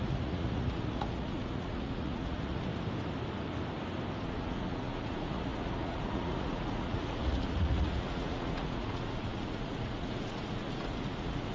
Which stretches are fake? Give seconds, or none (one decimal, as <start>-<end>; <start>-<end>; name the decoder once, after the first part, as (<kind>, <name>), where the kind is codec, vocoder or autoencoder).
0.0-2.7 (vocoder, Vocos); 4.2-11.5